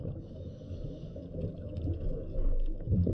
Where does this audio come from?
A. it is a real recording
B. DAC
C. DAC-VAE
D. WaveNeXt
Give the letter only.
B